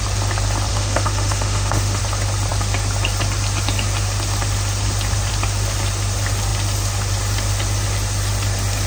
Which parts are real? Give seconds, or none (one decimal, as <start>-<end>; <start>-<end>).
0.0-0.7; 2.0-8.9